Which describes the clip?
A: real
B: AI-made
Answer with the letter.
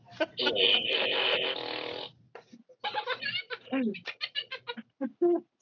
A